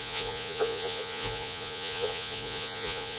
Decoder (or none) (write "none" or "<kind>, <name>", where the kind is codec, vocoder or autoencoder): vocoder, Vocos